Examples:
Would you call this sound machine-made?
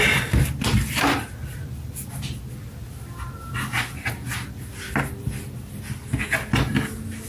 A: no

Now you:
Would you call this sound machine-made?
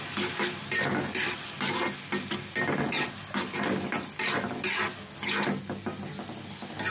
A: no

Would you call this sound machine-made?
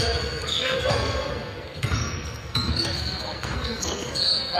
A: yes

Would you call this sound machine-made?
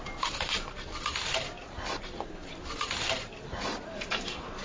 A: no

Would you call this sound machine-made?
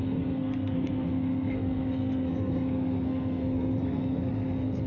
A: yes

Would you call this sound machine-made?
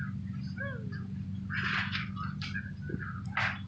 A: no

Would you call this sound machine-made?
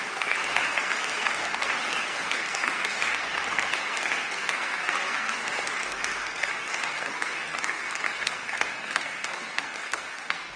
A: yes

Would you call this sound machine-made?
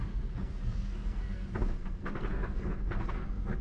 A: yes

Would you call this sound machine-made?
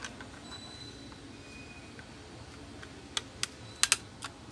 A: no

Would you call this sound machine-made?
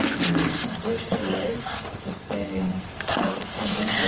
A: yes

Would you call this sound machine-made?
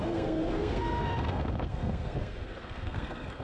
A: yes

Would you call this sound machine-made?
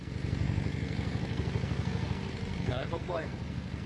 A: yes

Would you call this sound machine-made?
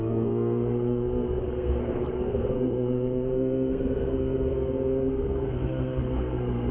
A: yes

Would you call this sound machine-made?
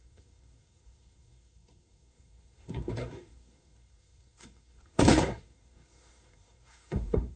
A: yes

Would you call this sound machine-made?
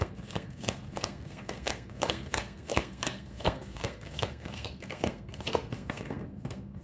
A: yes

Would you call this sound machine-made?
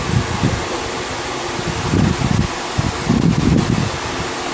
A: no